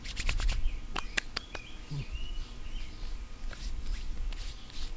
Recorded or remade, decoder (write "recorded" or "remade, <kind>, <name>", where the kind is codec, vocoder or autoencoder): recorded